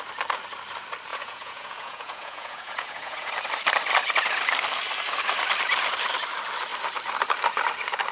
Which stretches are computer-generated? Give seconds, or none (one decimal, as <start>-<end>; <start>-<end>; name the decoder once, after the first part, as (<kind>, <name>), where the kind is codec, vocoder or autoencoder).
1.1-3.3 (vocoder, Vocos)